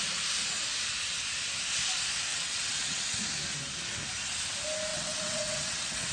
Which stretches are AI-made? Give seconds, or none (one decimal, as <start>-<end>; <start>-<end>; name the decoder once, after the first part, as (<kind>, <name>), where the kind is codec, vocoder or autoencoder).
2.3-3.2 (vocoder, WaveNeXt); 4.9-6.1